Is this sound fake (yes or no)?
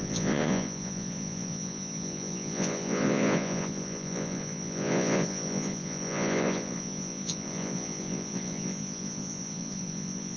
yes